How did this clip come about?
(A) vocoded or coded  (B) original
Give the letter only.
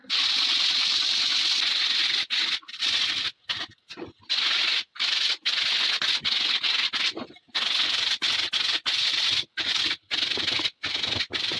B